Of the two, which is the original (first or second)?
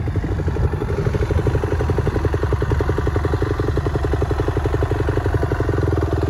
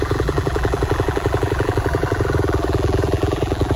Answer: first